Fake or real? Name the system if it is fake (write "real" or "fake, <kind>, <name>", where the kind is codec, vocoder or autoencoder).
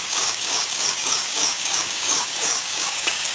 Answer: fake, codec, DAC